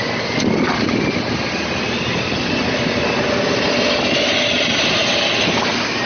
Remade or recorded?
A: recorded